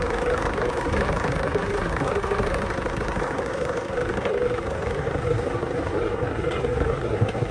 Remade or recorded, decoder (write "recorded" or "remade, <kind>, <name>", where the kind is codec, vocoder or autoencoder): remade, codec, SNAC